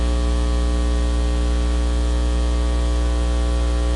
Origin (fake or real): real